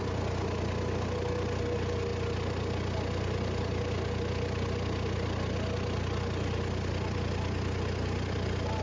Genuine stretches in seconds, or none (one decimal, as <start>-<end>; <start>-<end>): 0.0-8.8